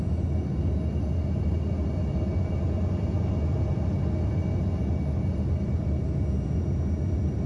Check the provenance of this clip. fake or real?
real